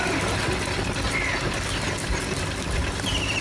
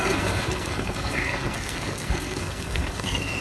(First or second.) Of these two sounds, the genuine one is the first